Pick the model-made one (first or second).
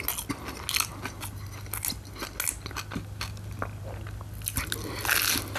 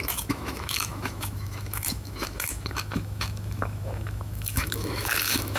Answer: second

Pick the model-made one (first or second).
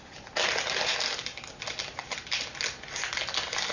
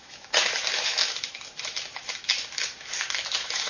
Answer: second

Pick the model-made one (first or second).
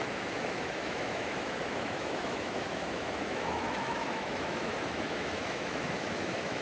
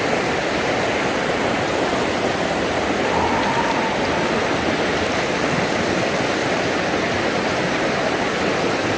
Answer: first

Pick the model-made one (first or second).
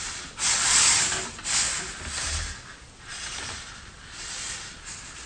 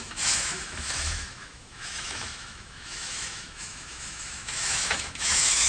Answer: second